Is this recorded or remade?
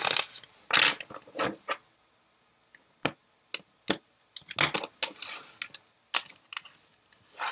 recorded